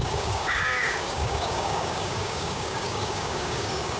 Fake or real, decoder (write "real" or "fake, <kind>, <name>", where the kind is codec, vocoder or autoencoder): fake, codec, DAC